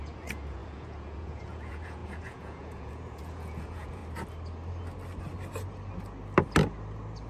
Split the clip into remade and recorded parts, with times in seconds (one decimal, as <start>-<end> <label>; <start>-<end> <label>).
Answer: 0.0-4.0 remade; 4.0-7.3 recorded